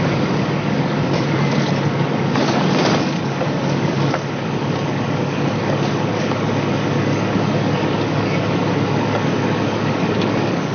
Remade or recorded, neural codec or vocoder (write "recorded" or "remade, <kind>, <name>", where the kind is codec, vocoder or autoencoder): remade, codec, DAC